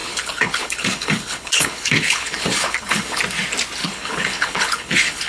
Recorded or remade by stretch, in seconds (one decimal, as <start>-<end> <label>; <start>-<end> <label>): 0.0-3.2 remade; 3.2-3.8 recorded; 3.8-5.3 remade